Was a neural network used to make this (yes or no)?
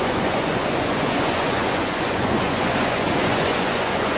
yes